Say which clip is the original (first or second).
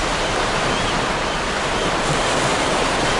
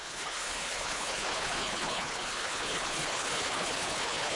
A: first